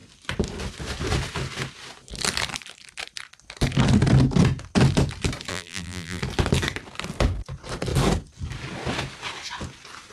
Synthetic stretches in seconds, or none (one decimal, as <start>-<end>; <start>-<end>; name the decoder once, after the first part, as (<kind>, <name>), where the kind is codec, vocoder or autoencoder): 5.5-6.2 (vocoder, BigVGAN v2)